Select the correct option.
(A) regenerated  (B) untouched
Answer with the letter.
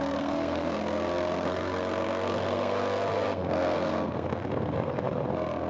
A